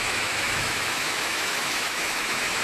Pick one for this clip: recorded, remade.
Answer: remade